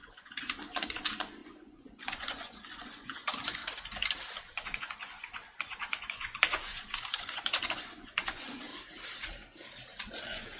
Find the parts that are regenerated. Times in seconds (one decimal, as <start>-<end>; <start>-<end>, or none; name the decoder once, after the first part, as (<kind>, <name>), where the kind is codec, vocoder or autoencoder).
0.0-3.6 (vocoder, Vocos); 4.4-8.7; 10.2-10.6